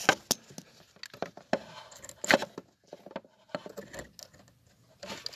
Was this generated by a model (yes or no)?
no